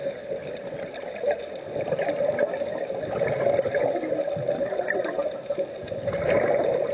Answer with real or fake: real